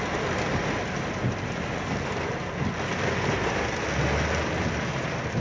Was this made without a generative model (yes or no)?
yes